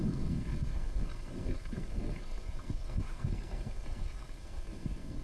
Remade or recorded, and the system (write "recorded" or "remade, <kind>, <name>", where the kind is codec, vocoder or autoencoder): remade, codec, SNAC